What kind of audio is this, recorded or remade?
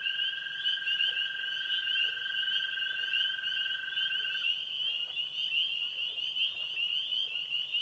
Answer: recorded